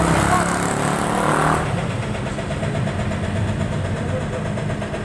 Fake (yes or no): no